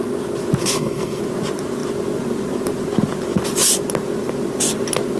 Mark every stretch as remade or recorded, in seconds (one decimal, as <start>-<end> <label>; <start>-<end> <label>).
0.0-0.6 recorded; 0.6-1.2 remade; 1.2-5.2 recorded